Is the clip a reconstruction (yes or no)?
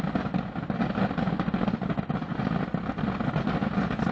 no